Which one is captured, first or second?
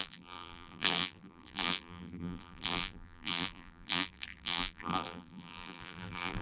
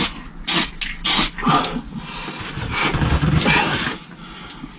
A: second